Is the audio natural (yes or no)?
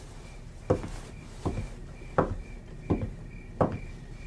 yes